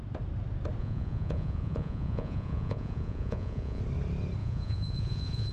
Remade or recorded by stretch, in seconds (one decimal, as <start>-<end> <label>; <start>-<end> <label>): 0.0-0.8 recorded; 0.8-3.8 remade; 3.8-4.4 recorded; 4.4-5.5 remade

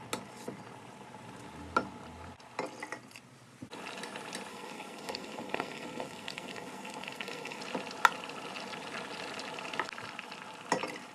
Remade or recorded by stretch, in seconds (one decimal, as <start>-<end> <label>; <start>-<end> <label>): 0.0-4.5 recorded; 4.5-7.6 remade; 7.6-11.1 recorded

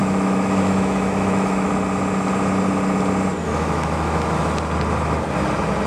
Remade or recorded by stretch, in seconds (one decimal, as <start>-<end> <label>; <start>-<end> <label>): 0.0-1.7 remade; 1.7-3.4 recorded; 3.4-4.6 remade; 4.6-5.9 recorded